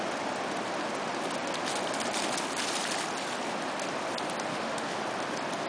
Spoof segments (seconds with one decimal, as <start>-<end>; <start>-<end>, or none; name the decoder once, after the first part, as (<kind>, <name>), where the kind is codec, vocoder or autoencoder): 4.5-5.0 (autoencoder, DAC-VAE)